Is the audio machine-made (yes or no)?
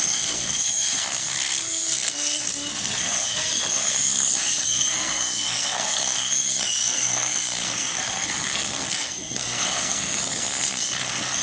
yes